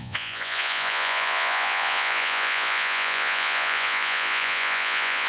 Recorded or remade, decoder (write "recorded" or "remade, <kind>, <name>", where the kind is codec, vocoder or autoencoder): remade, vocoder, Vocos